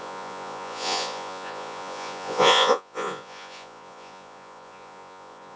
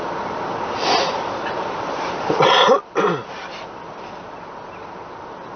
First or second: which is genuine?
second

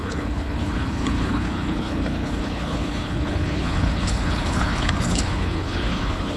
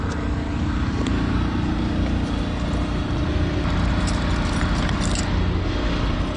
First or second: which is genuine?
second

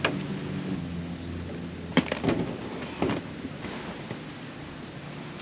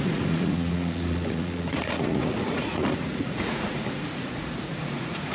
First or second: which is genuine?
first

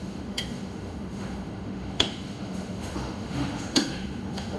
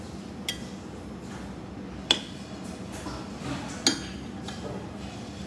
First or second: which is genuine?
second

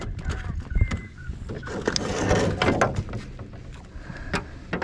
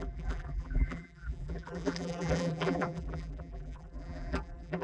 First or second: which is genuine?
first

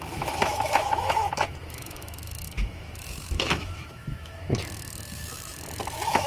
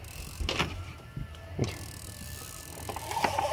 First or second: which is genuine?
second